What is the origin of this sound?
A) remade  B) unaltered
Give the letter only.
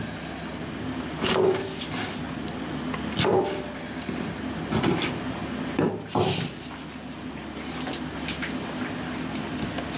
B